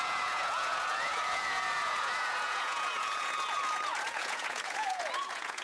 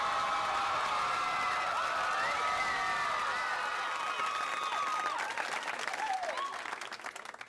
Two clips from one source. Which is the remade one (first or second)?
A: first